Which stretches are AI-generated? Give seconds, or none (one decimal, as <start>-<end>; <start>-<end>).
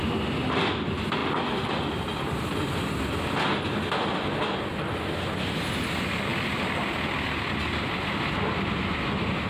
6.3-6.8